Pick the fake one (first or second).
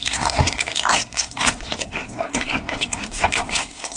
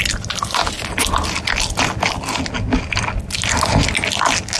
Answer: first